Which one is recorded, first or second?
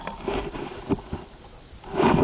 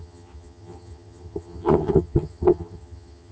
first